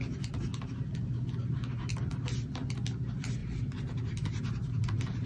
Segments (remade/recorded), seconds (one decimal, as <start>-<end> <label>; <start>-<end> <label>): 0.0-5.3 recorded

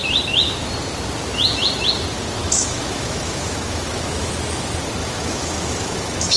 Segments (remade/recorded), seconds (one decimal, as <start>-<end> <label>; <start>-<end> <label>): 0.0-2.4 recorded; 2.4-4.3 remade; 4.3-5.0 recorded; 5.0-6.4 remade